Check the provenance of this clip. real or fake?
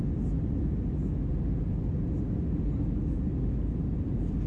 real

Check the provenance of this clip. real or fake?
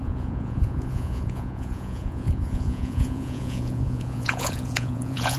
fake